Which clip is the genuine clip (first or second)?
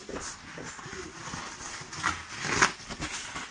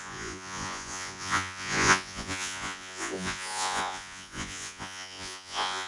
first